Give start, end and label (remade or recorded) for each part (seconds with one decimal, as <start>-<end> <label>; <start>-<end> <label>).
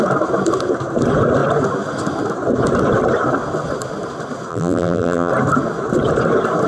0.0-4.5 recorded; 4.5-5.3 remade; 5.3-6.7 recorded